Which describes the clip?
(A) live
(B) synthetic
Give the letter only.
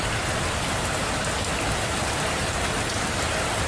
A